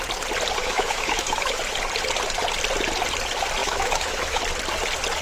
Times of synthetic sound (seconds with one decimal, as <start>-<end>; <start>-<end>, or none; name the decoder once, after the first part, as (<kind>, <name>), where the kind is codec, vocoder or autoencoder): 0.6-1.6 (autoencoder, DAC-VAE); 3.6-4.4